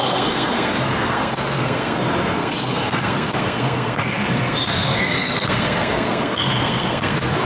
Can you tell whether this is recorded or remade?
remade